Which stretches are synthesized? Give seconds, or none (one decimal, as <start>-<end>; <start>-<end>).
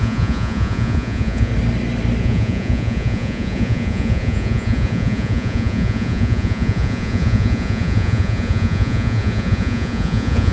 0.0-1.5; 2.2-10.5